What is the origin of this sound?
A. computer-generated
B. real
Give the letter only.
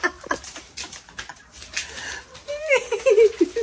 B